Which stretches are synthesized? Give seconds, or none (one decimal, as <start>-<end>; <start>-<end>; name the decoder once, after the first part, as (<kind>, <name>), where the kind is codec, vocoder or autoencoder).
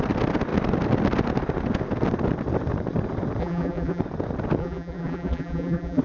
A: 3.4-4.0 (vocoder, BigVGAN v2); 4.6-6.0